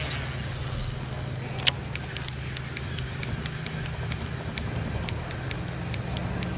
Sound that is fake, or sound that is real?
real